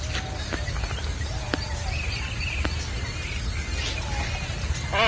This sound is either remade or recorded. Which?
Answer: recorded